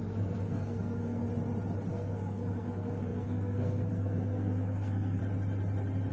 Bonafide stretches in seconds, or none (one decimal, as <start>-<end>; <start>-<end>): 1.2-1.9; 5.2-6.1